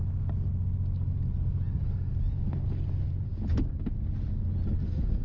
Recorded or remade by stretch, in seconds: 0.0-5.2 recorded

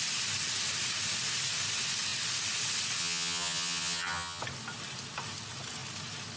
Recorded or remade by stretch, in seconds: 0.0-3.0 recorded; 3.0-4.4 remade; 4.4-6.4 recorded